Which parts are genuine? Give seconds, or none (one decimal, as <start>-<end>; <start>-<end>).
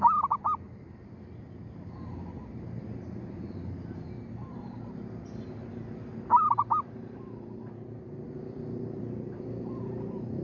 0.0-10.4